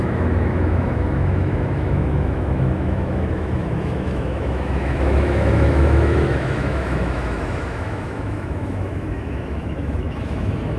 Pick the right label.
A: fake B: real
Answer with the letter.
A